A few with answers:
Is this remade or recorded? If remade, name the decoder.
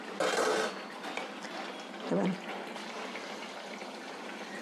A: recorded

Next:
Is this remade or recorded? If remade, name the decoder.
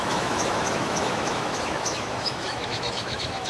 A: remade, autoencoder, DAC-VAE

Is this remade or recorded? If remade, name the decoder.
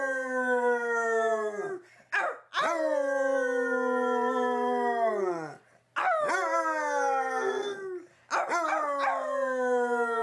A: recorded